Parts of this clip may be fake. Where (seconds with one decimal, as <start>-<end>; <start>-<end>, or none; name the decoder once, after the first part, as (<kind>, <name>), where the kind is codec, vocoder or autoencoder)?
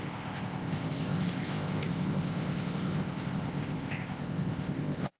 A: 0.0-5.2 (codec, ZipCodec)